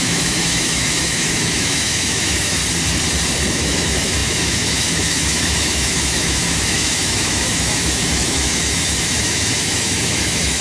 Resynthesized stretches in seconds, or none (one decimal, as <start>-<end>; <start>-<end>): 0.0-2.6; 3.5-10.6